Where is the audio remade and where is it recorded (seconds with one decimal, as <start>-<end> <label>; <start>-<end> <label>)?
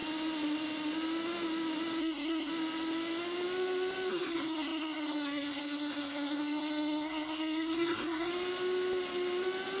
0.0-2.0 recorded; 2.0-2.5 remade; 2.5-4.1 recorded; 4.1-8.3 remade; 8.3-9.8 recorded